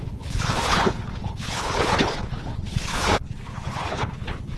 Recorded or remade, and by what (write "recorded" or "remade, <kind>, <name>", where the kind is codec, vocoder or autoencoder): remade, codec, HILCodec